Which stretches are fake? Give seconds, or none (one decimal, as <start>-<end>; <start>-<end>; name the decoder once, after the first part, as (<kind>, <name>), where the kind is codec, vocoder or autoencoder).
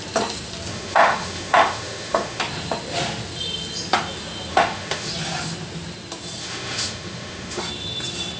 0.7-2.4 (autoencoder, DAC-VAE); 4.5-5.1; 6.4-7.6